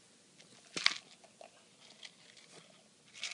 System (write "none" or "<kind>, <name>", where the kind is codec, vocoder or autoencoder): none